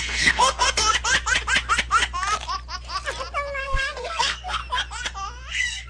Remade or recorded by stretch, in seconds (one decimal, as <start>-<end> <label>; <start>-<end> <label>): 0.0-0.8 remade; 0.8-3.6 recorded; 3.6-4.6 remade; 4.6-5.5 recorded; 5.5-5.9 remade